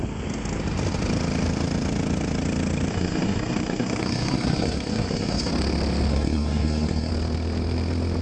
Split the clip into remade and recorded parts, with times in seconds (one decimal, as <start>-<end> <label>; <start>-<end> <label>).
0.0-2.9 recorded; 2.9-5.5 remade; 5.5-6.1 recorded; 6.1-7.1 remade; 7.1-8.2 recorded